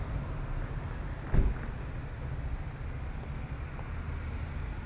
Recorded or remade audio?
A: recorded